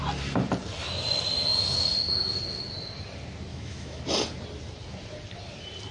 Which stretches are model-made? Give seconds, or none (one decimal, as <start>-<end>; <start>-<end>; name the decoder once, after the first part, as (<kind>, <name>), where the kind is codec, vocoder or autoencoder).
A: 3.5-4.0 (autoencoder, DAC-VAE)